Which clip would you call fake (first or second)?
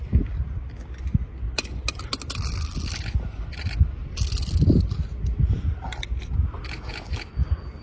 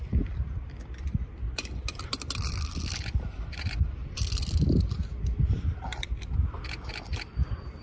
second